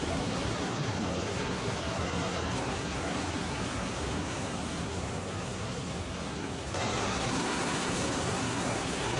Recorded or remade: remade